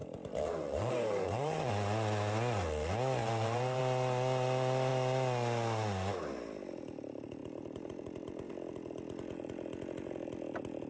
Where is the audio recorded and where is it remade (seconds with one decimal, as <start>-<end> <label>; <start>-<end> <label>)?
0.0-1.7 remade; 1.7-3.2 recorded; 3.2-3.8 remade; 3.8-7.4 recorded; 7.4-8.5 remade; 8.5-10.9 recorded